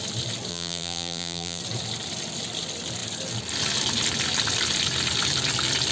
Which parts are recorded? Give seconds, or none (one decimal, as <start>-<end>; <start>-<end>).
0.0-0.5; 1.6-5.9